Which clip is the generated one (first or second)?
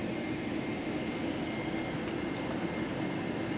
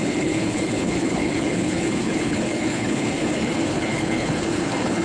second